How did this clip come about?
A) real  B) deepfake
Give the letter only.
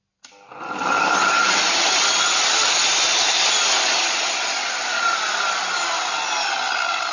A